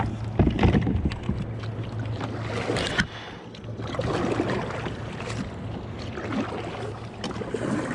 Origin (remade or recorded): recorded